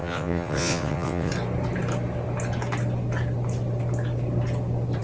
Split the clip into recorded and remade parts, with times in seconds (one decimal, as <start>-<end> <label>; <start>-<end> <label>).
0.0-1.3 remade; 1.3-5.0 recorded